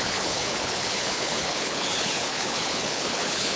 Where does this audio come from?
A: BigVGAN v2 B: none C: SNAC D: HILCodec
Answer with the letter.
D